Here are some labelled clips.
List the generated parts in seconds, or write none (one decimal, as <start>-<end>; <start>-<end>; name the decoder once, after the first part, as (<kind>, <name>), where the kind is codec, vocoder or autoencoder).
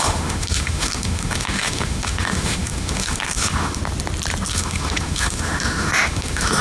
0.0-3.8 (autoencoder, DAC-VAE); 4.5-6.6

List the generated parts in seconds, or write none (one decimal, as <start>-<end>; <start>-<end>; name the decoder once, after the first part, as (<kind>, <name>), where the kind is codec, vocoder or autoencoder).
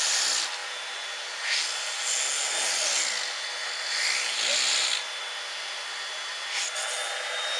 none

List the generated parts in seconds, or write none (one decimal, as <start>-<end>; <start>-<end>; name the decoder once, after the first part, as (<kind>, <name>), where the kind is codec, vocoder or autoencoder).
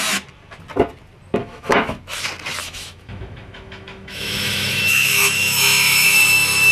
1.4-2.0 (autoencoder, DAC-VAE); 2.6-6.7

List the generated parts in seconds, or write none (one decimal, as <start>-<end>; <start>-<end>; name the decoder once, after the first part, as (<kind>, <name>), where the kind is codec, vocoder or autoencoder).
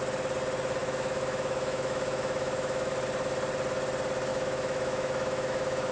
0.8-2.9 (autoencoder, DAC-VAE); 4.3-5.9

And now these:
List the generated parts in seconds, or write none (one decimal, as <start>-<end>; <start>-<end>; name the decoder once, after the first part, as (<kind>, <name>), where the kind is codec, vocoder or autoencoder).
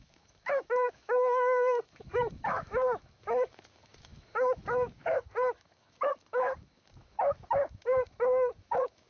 0.0-9.1 (autoencoder, DAC-VAE)